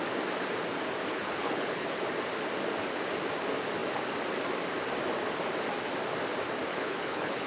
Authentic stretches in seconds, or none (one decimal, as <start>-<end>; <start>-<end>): 0.0-1.1; 2.1-6.7

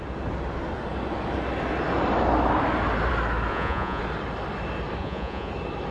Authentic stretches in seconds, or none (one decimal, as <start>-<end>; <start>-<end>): 0.0-3.5; 4.0-5.0; 5.5-5.9

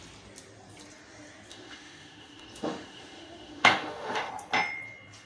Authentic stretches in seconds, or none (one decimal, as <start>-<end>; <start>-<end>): 0.0-1.5; 4.3-5.3

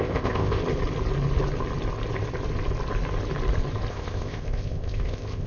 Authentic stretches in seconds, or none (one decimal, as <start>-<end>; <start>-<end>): 0.6-3.9

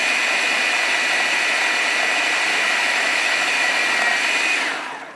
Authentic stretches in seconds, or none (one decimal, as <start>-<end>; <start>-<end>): 0.0-2.5; 3.8-5.2

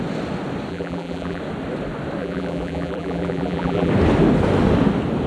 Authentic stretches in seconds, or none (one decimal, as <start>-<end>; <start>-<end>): 0.0-0.7; 1.4-2.2; 3.9-5.3